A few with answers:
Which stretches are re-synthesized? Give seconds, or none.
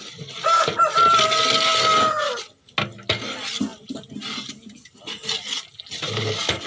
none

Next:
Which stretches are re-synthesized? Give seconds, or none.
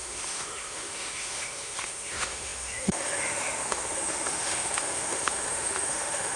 0.0-6.4 (autoencoder, DAC-VAE)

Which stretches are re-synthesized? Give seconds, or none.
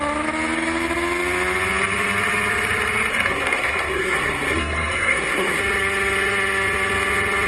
3.1-5.6 (codec, SNAC)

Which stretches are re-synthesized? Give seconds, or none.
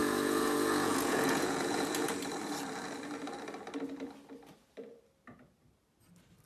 0.0-2.1 (vocoder, Vocos)